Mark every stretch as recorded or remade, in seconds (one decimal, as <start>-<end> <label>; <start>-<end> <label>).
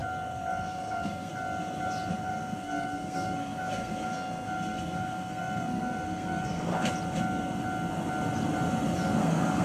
0.0-0.5 recorded; 0.5-1.3 remade; 1.3-2.1 recorded; 2.1-6.7 remade; 6.7-9.2 recorded; 9.2-9.6 remade